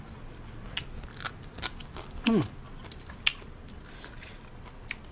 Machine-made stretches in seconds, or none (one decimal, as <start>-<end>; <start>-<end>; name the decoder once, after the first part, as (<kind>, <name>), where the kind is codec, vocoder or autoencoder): none